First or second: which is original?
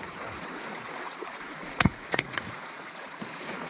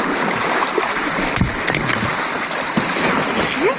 second